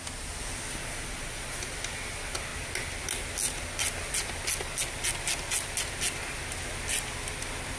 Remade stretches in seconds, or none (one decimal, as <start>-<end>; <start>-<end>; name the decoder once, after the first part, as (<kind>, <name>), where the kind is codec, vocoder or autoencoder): none